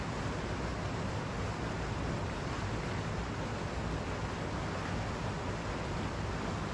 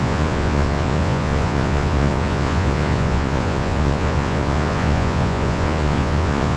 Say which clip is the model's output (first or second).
second